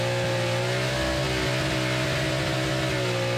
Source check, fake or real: real